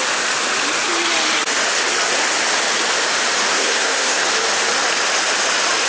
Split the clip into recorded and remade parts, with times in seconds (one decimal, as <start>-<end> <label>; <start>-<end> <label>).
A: 0.0-3.5 recorded; 3.5-4.3 remade; 4.3-5.9 recorded